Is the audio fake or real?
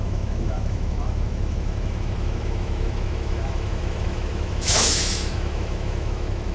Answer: fake